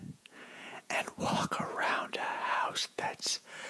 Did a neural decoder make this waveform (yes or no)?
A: yes